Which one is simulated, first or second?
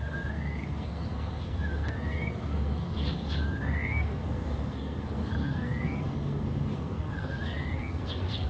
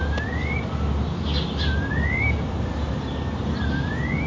first